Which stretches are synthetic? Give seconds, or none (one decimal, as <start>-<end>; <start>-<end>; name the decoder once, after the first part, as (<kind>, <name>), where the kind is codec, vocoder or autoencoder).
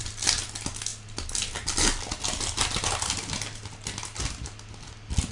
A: none